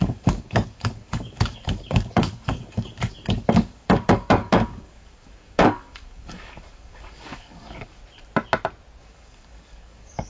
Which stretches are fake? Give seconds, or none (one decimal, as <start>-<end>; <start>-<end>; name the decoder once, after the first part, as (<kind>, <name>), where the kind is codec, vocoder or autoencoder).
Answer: 0.0-8.0 (codec, DAC); 9.0-10.3